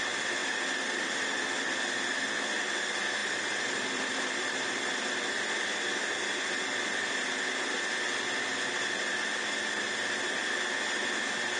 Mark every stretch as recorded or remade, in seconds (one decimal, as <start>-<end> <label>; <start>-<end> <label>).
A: 0.0-0.4 recorded; 0.4-1.3 remade; 1.3-3.2 recorded; 3.2-4.9 remade; 4.9-11.6 recorded